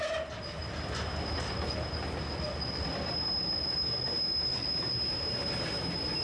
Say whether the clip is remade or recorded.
recorded